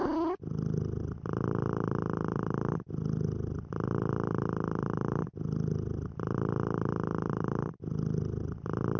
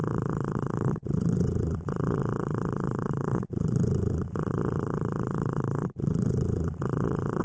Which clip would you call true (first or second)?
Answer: first